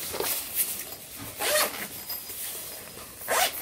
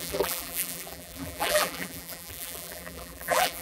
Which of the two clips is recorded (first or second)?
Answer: first